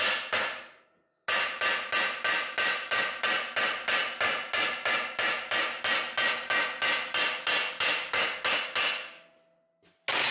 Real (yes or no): yes